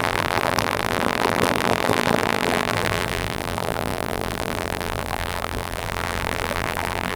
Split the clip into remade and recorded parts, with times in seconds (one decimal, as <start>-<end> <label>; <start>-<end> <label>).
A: 0.0-7.2 remade